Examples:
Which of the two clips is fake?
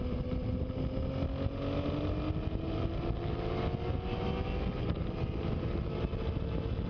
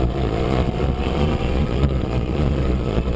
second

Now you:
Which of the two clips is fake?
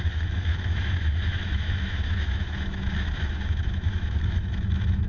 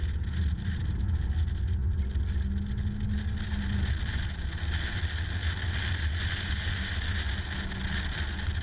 first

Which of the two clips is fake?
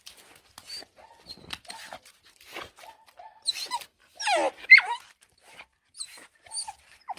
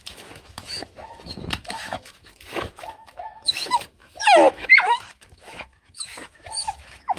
second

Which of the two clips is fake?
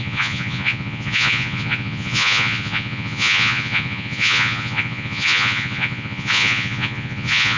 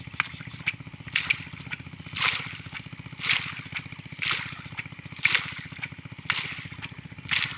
first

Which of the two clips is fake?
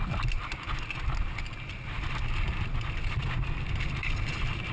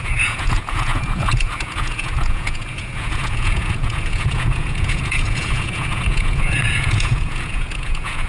second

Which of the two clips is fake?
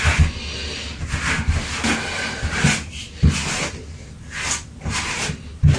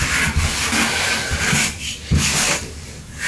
second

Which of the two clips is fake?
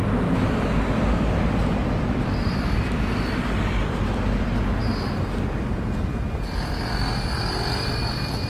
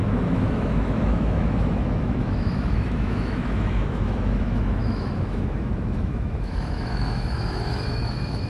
second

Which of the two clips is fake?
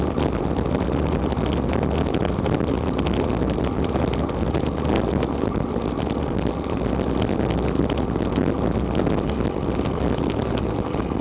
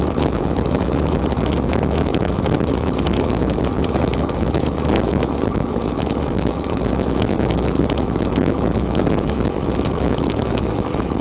second